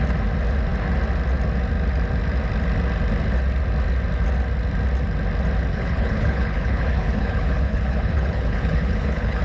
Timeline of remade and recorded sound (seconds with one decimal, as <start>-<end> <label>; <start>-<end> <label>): 0.0-5.7 recorded; 5.7-9.4 remade